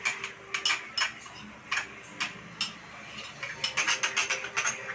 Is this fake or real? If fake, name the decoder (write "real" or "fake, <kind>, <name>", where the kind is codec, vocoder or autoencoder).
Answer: real